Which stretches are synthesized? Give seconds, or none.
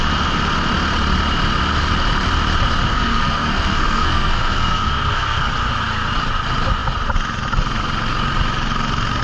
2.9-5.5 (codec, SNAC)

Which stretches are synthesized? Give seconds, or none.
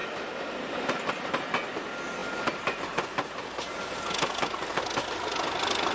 none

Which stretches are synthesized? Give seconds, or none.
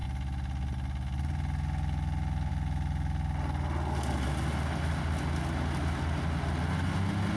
none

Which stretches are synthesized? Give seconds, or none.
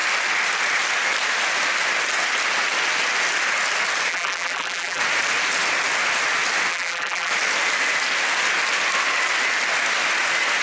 4.1-5.0 (vocoder, BigVGAN v2); 6.7-7.3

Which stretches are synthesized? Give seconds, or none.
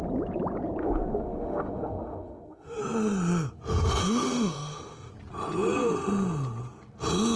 0.8-2.8 (autoencoder, DAC-VAE); 4.0-5.1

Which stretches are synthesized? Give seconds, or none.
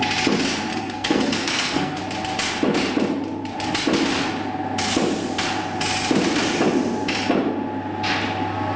0.7-2.0 (codec, SNAC)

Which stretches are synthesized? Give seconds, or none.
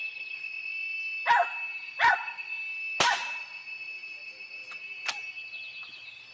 none